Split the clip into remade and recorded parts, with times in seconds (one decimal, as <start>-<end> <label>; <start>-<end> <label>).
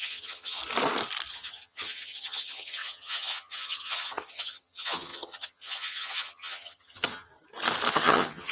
0.0-0.6 remade; 0.6-1.3 recorded; 1.3-7.3 remade; 7.3-7.9 recorded; 7.9-8.5 remade